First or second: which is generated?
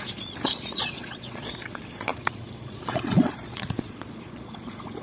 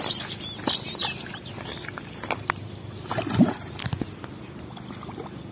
first